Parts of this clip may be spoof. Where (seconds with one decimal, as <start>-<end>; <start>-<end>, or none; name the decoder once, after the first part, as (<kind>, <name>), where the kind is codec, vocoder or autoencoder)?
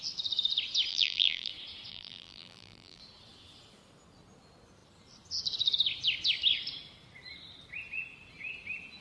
0.9-1.5 (vocoder, BigVGAN v2); 1.9-3.0